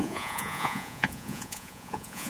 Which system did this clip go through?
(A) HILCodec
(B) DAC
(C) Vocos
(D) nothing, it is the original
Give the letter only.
C